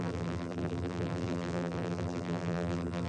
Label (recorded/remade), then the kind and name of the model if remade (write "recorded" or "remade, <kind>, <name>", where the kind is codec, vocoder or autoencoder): remade, vocoder, BigVGAN v2